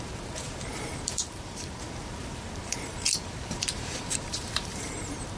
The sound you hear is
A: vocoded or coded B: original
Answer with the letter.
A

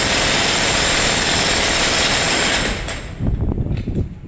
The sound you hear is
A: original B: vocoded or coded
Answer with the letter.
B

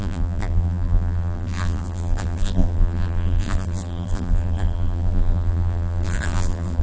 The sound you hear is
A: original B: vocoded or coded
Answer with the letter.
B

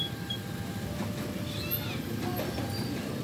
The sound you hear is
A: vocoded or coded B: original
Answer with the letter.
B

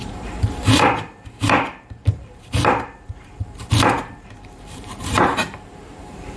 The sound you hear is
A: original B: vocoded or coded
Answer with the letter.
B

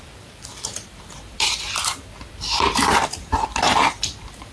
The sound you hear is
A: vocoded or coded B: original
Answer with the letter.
A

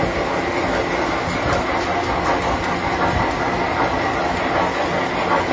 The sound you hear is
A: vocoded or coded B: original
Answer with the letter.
B